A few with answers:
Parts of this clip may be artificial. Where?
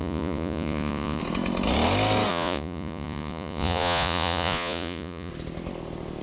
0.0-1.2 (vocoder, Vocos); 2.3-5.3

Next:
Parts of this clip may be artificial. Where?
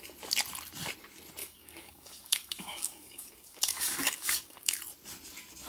1.4-4.8 (codec, DAC)